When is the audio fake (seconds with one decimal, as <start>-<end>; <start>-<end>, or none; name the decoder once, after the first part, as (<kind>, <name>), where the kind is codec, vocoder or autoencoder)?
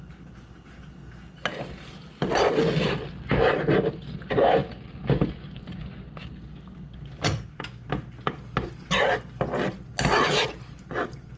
none